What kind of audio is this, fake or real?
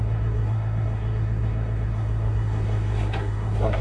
fake